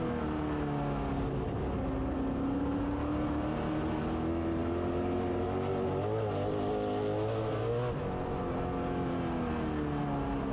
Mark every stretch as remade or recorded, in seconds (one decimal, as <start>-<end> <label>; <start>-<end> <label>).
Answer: 0.0-10.5 recorded